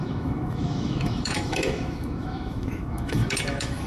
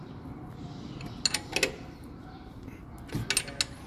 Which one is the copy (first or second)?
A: first